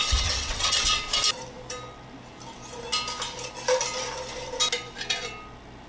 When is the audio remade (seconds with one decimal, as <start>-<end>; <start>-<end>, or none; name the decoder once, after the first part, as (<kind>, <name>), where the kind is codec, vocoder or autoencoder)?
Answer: 0.0-1.0 (vocoder, WaveNeXt)